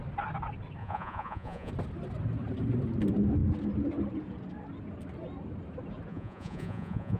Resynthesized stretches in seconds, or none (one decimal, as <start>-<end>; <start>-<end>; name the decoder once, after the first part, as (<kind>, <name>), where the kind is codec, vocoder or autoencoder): 0.8-1.7 (vocoder, Vocos); 6.1-7.2